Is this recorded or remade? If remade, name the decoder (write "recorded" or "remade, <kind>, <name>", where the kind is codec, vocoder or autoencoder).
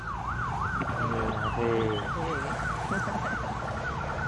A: recorded